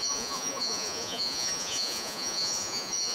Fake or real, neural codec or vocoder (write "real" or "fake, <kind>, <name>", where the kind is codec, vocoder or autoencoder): fake, vocoder, Vocos